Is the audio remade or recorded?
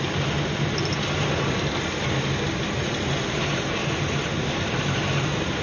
recorded